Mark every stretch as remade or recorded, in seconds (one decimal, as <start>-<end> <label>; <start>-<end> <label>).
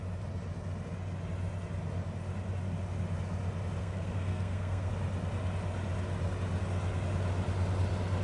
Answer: 0.0-3.8 recorded; 3.8-4.9 remade; 4.9-8.2 recorded